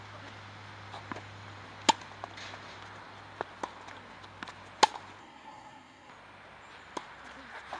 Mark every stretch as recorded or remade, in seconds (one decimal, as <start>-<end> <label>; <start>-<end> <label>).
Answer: 0.0-5.2 recorded; 5.2-6.1 remade; 6.1-7.8 recorded